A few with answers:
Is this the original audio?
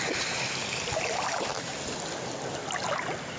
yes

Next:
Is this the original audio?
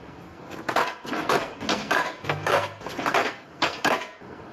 no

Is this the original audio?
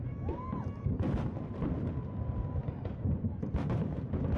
yes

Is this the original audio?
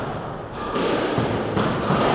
yes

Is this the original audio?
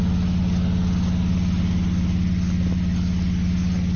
yes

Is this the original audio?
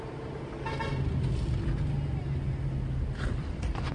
yes